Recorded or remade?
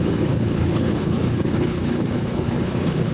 remade